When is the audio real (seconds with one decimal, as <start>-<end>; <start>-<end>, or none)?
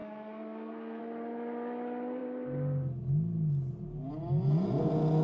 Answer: 1.0-5.2